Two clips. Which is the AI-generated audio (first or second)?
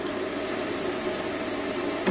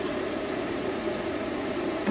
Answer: second